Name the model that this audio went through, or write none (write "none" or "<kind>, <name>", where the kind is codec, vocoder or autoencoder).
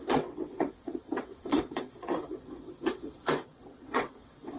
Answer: vocoder, WaveNeXt